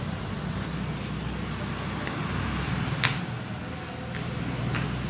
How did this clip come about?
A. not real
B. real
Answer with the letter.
B